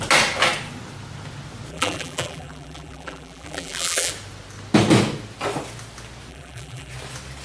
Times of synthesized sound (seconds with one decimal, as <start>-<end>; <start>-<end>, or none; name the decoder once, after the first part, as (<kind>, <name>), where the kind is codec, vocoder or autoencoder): 1.7-4.1 (vocoder, BigVGAN v2); 6.3-6.9